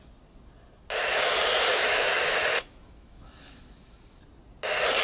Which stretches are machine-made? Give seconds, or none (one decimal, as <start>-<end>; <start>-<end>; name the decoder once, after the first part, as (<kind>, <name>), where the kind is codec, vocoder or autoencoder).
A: 1.7-4.2 (autoencoder, DAC-VAE)